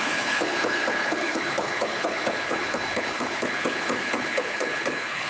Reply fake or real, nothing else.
fake